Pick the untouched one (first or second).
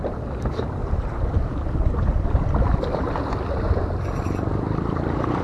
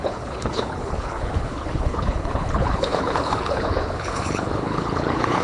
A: first